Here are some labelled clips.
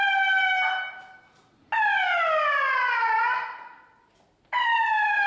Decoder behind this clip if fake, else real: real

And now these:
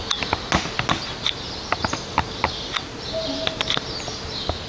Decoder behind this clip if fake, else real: real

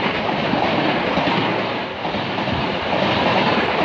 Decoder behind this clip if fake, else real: real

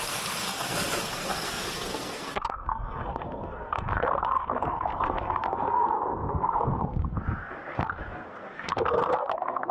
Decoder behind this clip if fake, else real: fake, codec, SNAC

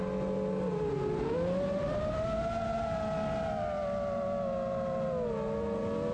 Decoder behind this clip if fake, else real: real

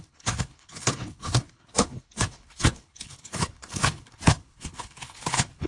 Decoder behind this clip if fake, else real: fake, codec, HILCodec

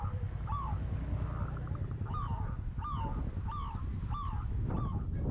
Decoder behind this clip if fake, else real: real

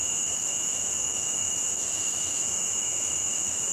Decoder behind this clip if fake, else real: fake, autoencoder, DAC-VAE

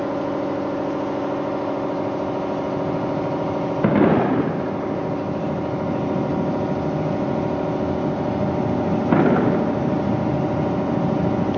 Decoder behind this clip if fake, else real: real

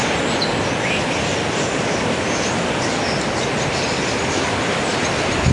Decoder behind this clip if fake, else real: real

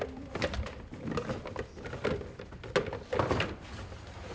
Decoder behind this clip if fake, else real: real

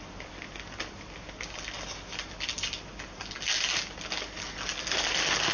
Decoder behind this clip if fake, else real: real